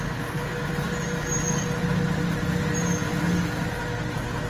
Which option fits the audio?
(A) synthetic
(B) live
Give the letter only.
B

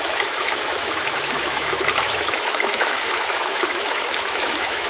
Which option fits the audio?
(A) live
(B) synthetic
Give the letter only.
B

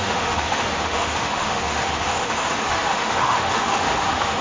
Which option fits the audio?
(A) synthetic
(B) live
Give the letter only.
A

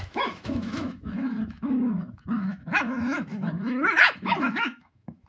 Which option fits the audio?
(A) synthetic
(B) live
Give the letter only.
A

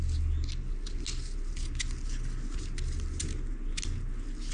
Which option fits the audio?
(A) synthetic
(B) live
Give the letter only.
B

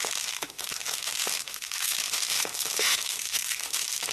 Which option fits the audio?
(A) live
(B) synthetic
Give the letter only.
B